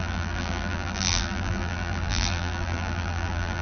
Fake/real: fake